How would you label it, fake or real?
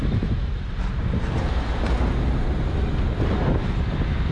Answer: real